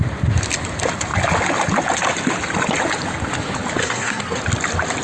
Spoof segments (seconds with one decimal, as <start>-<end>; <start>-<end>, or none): 3.8-4.4